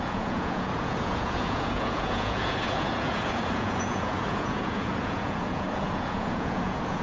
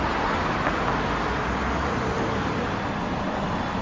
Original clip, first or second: second